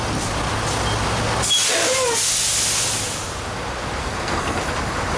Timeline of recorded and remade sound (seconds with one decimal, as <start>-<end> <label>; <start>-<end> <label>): 0.0-4.0 recorded; 4.0-4.6 remade; 4.6-5.2 recorded